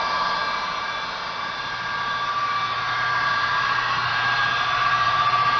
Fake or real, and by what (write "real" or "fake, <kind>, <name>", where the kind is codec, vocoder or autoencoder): fake, vocoder, BigVGAN v2